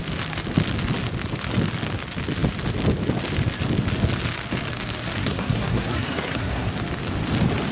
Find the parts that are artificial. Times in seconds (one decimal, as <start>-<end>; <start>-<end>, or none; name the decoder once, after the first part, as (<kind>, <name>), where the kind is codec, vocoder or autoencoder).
5.2-6.7 (codec, SNAC)